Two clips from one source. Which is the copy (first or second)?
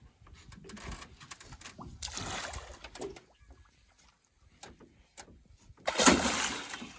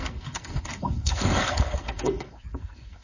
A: second